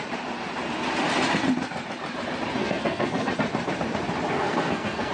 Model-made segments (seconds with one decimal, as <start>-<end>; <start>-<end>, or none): 2.6-3.3; 4.3-5.1